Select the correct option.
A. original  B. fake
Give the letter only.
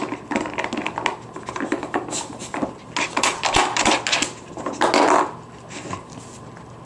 A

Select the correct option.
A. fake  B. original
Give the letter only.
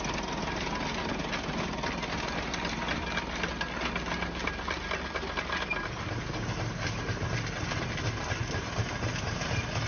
B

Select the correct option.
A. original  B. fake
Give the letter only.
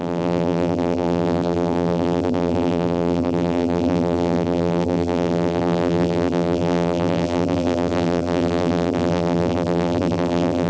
B